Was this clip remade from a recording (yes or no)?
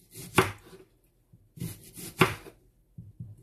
yes